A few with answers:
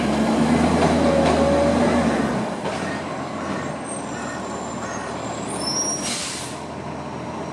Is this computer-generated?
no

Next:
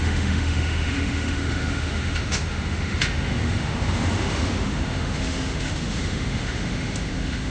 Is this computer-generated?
yes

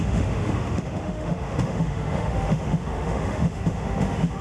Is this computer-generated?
yes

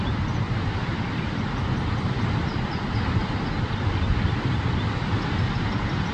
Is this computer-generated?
no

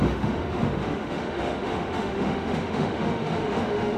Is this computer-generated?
yes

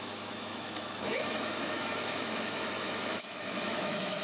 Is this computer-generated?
yes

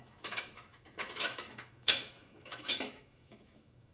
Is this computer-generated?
yes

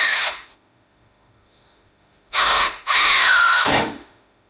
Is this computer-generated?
yes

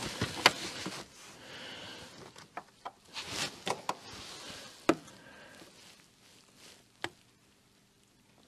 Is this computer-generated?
no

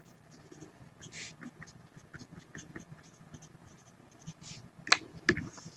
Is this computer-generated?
no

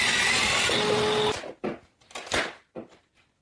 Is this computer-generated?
no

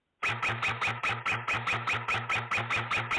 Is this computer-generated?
no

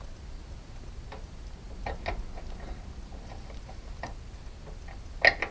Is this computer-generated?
no